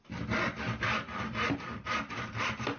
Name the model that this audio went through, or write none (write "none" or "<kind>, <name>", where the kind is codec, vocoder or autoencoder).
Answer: none